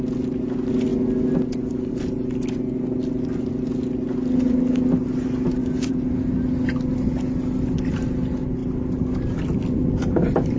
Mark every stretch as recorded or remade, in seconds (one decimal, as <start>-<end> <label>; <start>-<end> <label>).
0.0-5.6 recorded; 5.6-6.2 remade; 6.2-10.6 recorded